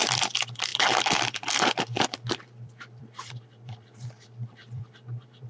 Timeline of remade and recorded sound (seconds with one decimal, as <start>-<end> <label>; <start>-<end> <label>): 0.0-5.5 remade